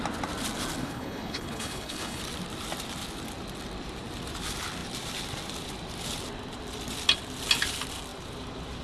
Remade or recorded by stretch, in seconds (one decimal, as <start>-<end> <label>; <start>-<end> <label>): 0.0-0.8 recorded; 0.8-2.2 remade; 2.2-8.8 recorded